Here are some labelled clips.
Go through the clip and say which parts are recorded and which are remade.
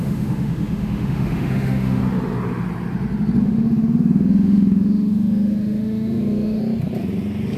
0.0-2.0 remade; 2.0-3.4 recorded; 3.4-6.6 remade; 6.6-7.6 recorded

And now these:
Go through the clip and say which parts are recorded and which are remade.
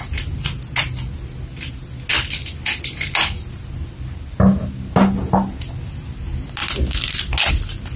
0.0-8.0 recorded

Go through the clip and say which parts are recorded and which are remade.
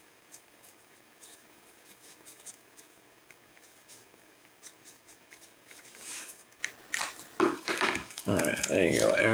0.0-6.6 remade; 6.6-7.4 recorded; 7.4-9.3 remade